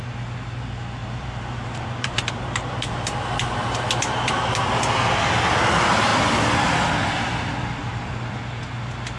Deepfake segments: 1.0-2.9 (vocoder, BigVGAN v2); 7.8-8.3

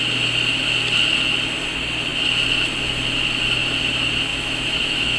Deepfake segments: 4.3-5.2 (autoencoder, DAC-VAE)

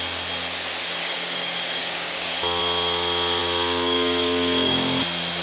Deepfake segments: 1.0-2.6 (codec, DAC); 3.4-5.0

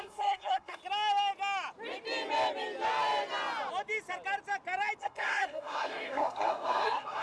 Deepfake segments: 0.0-0.8 (codec, SNAC); 5.0-7.2

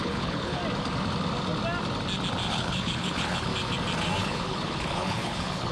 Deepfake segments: 0.0-0.6 (codec, HILCodec); 2.5-3.5; 4.2-5.7

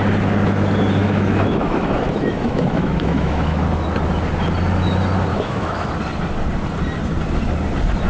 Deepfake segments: 1.0-3.6 (autoencoder, DAC-VAE); 5.3-5.9

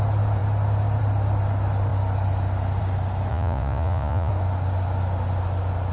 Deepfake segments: 3.3-4.3 (vocoder, Vocos)

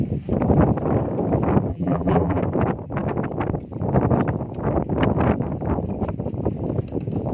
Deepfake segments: 1.7-2.4 (vocoder, BigVGAN v2)